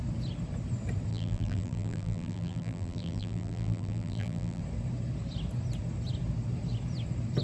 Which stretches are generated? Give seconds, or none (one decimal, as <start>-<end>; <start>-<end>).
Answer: 1.1-4.6